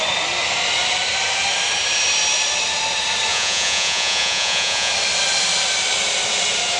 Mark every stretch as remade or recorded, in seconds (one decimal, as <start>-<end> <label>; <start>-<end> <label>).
0.0-3.3 recorded; 3.3-4.9 remade; 4.9-6.8 recorded